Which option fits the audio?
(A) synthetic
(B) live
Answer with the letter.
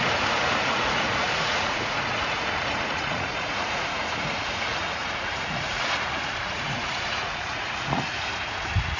A